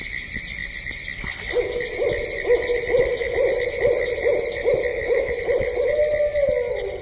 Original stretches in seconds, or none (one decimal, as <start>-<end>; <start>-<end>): 0.0-4.9; 5.4-7.0

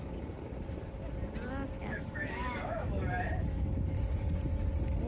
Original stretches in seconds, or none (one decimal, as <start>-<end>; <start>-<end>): 0.0-1.8; 3.0-5.1

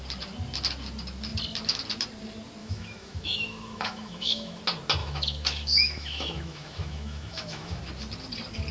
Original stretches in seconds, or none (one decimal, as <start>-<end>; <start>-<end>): 0.0-2.6; 4.6-5.0; 7.8-8.7

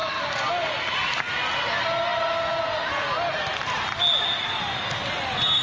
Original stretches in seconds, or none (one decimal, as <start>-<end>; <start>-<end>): 0.0-5.6

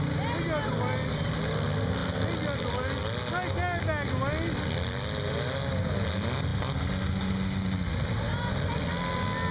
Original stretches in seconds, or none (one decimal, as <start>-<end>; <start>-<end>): 0.0-9.5